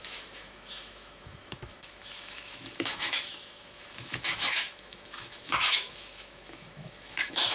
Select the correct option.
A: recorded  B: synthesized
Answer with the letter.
B